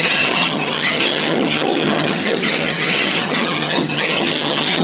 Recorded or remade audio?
remade